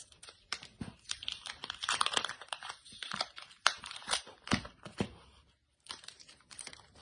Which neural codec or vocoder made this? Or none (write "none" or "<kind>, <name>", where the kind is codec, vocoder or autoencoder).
vocoder, BigVGAN v2